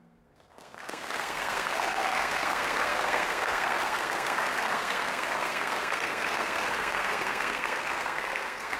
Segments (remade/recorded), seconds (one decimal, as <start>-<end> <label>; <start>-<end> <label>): 0.0-8.8 remade